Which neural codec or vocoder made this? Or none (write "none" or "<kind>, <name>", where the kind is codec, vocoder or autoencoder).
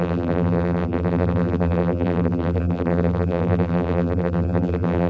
vocoder, BigVGAN v2